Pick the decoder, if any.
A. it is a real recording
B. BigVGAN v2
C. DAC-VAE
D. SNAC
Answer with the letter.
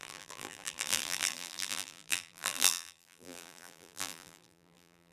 B